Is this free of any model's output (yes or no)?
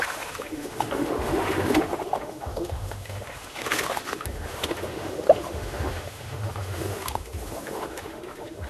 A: no